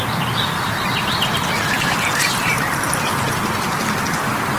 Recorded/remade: recorded